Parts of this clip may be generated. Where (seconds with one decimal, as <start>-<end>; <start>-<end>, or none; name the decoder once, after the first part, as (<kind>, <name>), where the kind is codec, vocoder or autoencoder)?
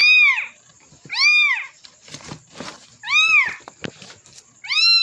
none